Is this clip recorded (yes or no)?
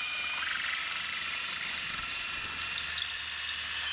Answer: yes